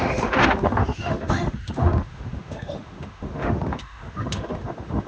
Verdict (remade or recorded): remade